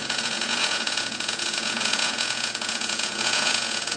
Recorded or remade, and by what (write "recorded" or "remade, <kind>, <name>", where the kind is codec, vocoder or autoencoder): remade, vocoder, Vocos